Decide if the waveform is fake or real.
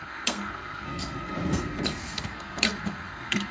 fake